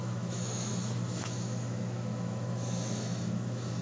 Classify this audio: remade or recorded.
remade